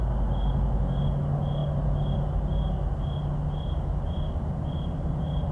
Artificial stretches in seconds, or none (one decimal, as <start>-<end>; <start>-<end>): none